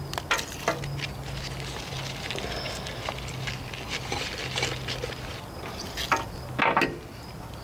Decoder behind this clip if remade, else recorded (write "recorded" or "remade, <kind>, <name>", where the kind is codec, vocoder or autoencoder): recorded